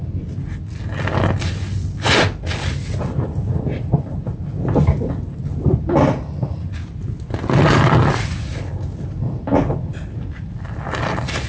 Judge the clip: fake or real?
real